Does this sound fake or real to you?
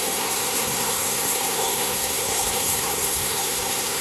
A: fake